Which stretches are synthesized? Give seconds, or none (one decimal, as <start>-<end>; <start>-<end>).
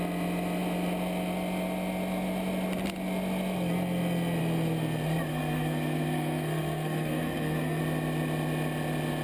5.3-7.8